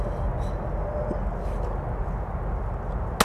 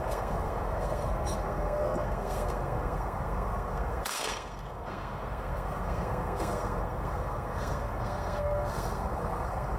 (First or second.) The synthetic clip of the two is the second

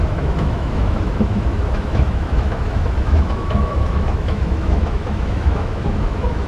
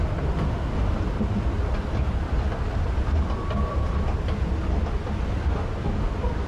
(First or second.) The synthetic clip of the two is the first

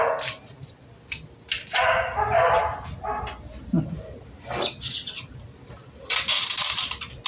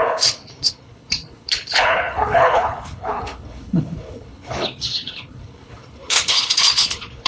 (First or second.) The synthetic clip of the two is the second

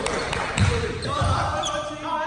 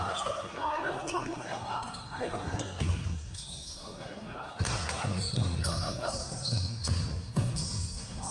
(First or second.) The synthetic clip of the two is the second